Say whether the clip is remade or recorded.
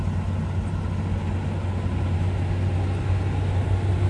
recorded